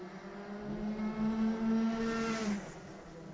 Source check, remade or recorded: recorded